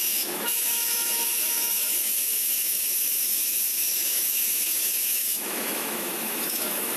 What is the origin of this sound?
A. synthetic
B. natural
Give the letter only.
A